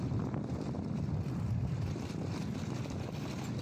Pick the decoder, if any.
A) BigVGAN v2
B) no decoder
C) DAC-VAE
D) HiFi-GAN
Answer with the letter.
B